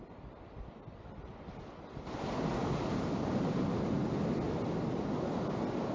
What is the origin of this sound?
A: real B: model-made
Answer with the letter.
A